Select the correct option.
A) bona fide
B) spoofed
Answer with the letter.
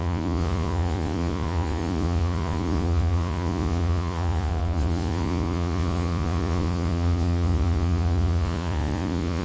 B